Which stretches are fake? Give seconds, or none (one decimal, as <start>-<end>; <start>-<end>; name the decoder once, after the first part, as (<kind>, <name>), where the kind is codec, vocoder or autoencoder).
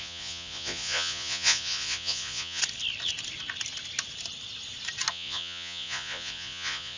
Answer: 0.0-2.6 (vocoder, Vocos); 5.1-7.0